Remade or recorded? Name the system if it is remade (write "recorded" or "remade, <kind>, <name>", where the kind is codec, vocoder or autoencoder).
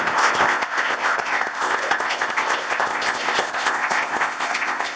remade, codec, ZipCodec